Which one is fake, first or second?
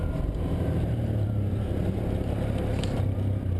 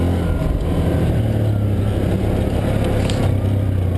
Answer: first